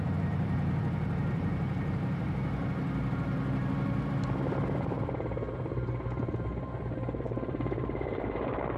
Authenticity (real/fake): fake